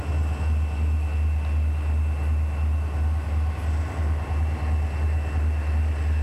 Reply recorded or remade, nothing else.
recorded